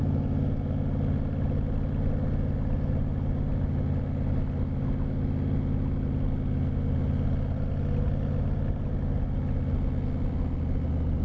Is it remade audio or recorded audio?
recorded